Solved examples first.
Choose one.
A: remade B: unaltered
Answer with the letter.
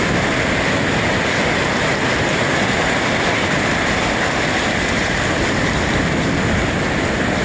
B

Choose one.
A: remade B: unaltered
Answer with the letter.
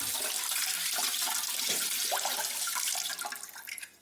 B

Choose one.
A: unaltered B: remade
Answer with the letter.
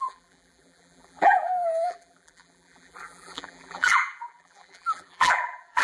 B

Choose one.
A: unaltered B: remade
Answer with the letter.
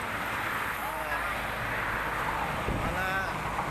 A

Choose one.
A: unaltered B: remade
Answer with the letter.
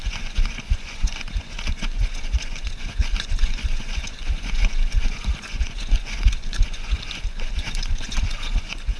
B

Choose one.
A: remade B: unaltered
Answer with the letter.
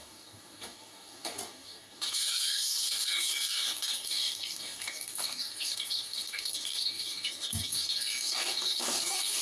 A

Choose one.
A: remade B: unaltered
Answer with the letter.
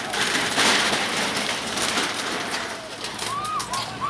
B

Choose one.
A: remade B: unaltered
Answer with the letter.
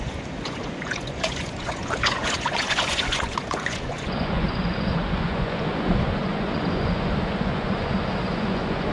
A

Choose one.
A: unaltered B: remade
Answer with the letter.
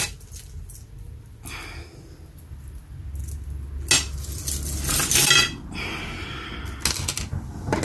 A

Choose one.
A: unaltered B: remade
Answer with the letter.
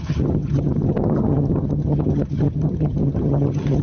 B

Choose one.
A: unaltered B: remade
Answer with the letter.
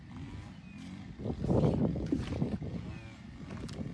A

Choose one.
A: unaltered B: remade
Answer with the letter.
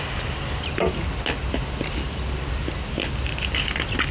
A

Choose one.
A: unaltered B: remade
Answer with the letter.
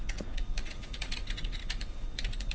B